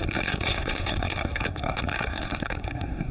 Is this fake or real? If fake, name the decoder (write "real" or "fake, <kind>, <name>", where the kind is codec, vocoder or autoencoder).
fake, codec, SNAC